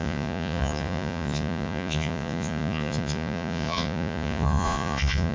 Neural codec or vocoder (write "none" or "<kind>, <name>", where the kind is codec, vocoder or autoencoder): vocoder, Vocos